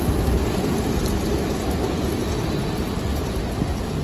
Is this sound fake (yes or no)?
no